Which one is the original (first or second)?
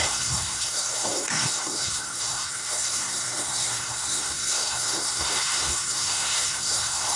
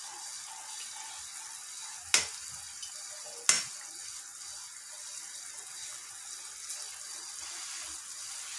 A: second